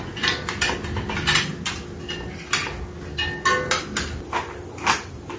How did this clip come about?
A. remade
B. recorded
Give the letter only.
B